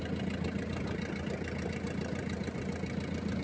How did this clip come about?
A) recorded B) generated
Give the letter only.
A